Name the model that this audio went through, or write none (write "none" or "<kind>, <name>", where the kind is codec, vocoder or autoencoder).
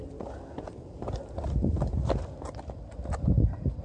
none